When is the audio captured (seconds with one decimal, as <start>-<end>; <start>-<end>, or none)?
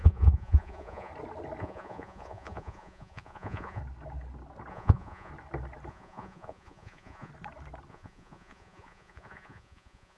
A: 1.1-1.6; 3.8-4.7; 5.3-5.9; 7.3-7.9